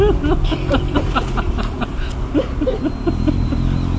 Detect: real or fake real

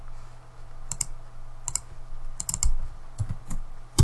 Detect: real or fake real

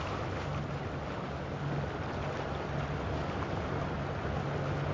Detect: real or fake real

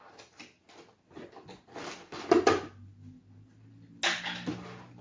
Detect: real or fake real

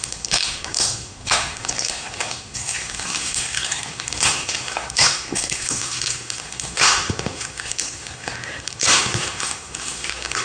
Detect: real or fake fake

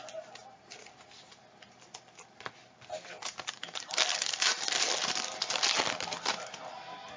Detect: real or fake real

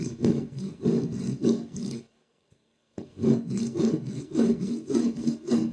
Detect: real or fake fake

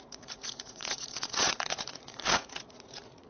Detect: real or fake fake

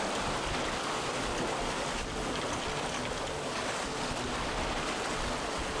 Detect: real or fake real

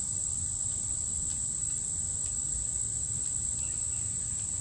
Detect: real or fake real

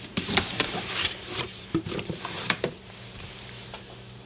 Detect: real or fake fake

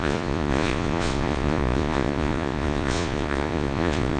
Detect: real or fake fake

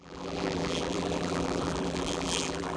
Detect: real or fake fake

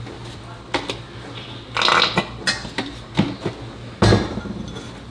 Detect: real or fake real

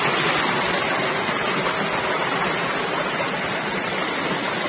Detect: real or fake real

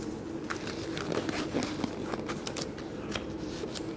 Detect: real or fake real